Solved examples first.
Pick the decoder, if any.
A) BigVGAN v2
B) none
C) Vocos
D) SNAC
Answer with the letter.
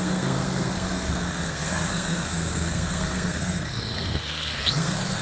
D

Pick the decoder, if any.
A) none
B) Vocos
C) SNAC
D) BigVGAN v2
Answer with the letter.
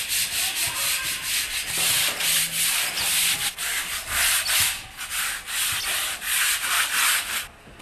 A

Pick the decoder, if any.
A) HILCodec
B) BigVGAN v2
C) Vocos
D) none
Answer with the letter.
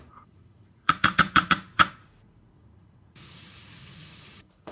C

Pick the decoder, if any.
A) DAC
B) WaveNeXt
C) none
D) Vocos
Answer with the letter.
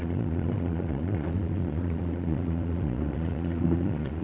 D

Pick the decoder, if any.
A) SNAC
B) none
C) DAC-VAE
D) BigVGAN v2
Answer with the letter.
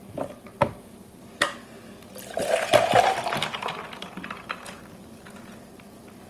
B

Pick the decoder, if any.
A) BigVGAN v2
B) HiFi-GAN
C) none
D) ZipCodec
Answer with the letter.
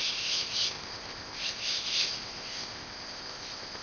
D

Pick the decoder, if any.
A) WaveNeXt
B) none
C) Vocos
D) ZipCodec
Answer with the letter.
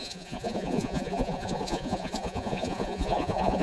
C